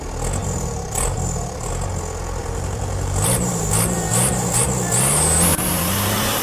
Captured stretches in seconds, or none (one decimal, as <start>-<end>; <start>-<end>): 0.0-0.4; 1.7-2.4; 4.6-5.5